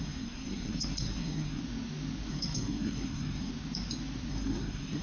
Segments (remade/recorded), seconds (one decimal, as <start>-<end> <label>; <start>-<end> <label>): 0.0-1.6 remade; 1.6-2.3 recorded; 2.3-3.5 remade; 3.5-4.3 recorded; 4.3-5.0 remade